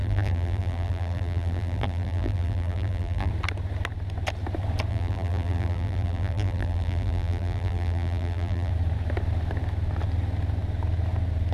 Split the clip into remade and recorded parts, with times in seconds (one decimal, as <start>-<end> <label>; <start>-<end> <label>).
0.0-3.3 remade; 3.3-4.9 recorded; 4.9-8.7 remade; 8.7-11.5 recorded